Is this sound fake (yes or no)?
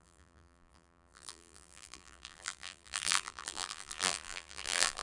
yes